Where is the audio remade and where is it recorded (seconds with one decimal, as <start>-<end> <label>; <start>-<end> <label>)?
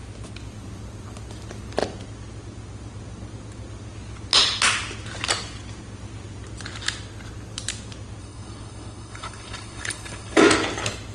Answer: 0.0-8.2 recorded; 8.2-10.4 remade; 10.4-11.1 recorded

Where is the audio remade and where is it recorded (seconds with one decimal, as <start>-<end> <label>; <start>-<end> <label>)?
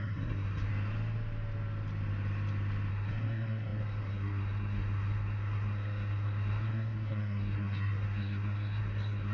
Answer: 0.0-0.7 remade; 0.7-2.9 recorded; 2.9-9.3 remade